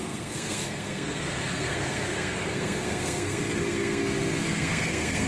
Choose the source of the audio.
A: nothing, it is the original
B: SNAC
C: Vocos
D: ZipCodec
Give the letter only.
B